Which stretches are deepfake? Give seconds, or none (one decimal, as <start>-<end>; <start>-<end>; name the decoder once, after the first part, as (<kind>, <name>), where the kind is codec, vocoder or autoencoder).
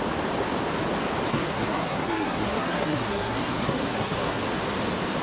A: 1.3-4.4 (codec, SNAC)